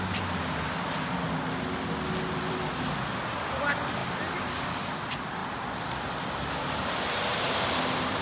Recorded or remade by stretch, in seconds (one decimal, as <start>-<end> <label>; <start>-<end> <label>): 0.0-8.2 recorded